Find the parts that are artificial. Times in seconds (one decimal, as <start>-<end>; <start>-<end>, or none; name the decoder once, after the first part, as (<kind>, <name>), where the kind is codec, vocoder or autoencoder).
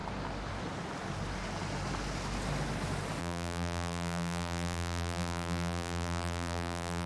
3.2-7.1 (vocoder, BigVGAN v2)